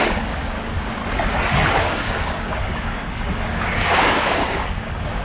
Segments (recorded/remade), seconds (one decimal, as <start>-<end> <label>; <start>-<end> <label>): 0.0-1.0 remade; 1.0-1.7 recorded; 1.7-5.2 remade